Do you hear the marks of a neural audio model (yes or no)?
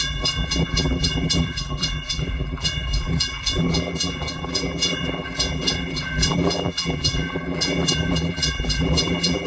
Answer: yes